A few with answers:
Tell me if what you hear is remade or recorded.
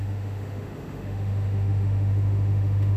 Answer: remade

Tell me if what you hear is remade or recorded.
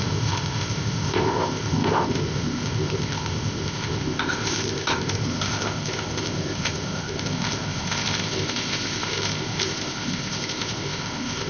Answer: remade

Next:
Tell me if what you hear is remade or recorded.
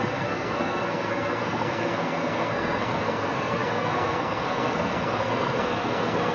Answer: remade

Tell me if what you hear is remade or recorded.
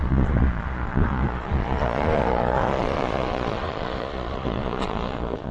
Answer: remade